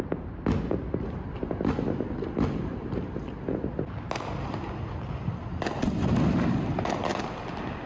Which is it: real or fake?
real